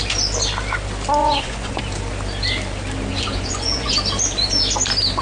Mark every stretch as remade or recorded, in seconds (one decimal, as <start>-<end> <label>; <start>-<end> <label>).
0.0-1.2 recorded; 1.2-1.8 remade; 1.8-3.1 recorded; 3.1-3.9 remade; 3.9-5.2 recorded

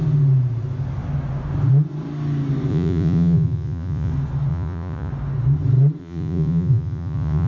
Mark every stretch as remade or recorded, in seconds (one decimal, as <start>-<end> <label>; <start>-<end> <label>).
0.0-2.7 recorded; 2.7-4.1 remade; 4.1-4.5 recorded; 4.5-5.1 remade; 5.1-6.0 recorded; 6.0-7.5 remade

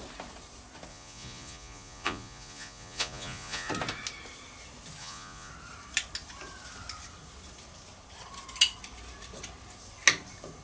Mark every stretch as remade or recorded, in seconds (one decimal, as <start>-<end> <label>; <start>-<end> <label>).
0.0-0.9 recorded; 0.9-3.7 remade; 3.7-5.0 recorded; 5.0-5.5 remade; 5.5-10.6 recorded

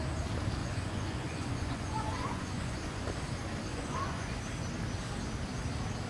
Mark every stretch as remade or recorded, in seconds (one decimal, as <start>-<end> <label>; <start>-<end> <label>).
0.0-0.6 recorded; 0.6-3.1 remade; 3.1-3.7 recorded; 3.7-4.4 remade; 4.4-6.1 recorded

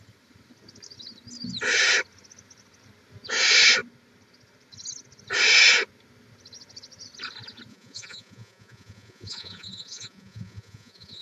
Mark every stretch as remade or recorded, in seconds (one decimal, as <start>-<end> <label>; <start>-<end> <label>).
0.0-7.7 recorded; 7.7-11.2 remade

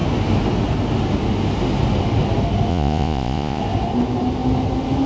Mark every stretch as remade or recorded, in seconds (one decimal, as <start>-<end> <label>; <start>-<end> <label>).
0.0-2.7 recorded; 2.7-3.6 remade; 3.6-5.1 recorded

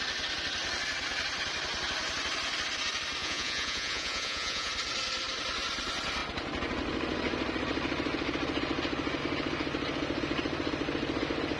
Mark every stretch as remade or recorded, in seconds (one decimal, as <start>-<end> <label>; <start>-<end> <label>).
0.0-3.2 recorded; 3.2-4.7 remade; 4.7-11.6 recorded

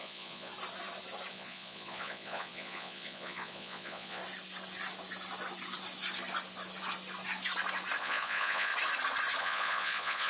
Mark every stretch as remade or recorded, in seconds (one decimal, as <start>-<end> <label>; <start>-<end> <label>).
0.0-0.5 remade; 0.5-1.3 recorded; 1.3-4.2 remade; 4.2-8.0 recorded; 8.0-8.7 remade; 8.7-9.4 recorded; 9.4-10.3 remade